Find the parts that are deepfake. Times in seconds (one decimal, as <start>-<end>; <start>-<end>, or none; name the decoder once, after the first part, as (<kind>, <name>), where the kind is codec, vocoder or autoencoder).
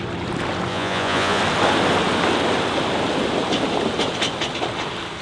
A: 0.7-1.4 (vocoder, Vocos)